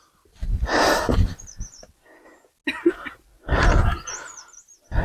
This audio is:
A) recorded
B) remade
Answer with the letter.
A